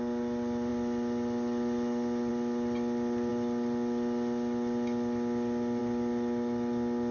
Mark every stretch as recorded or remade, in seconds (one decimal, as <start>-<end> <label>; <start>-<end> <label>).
0.0-7.1 recorded

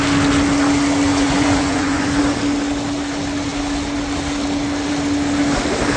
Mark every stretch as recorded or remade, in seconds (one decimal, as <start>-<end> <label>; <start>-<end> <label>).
0.0-1.1 recorded; 1.1-2.1 remade; 2.1-6.0 recorded

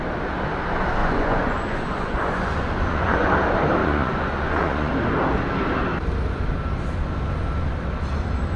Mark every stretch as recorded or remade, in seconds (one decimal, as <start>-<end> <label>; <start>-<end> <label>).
0.0-1.0 recorded; 1.0-3.3 remade; 3.3-3.8 recorded; 3.8-4.9 remade; 4.9-8.6 recorded

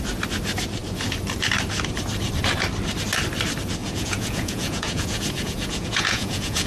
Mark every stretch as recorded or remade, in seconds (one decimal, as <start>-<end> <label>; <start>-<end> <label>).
0.0-3.8 recorded; 3.8-6.7 remade

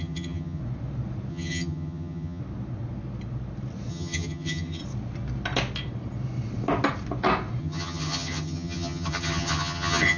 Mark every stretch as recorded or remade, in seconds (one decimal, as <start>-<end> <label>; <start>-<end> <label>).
0.0-0.6 remade; 0.6-1.3 recorded; 1.3-2.4 remade; 2.4-3.9 recorded; 3.9-4.8 remade; 4.8-7.6 recorded; 7.6-10.2 remade

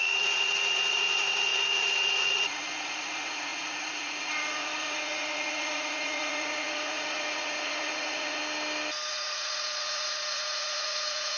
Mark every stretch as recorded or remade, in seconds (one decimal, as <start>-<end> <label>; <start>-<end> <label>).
0.0-8.4 remade; 8.4-9.1 recorded; 9.1-11.4 remade

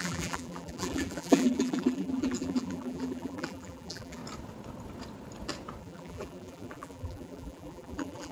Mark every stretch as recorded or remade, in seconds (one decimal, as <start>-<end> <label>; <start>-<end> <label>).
0.0-4.2 remade; 4.2-5.8 recorded; 5.8-8.3 remade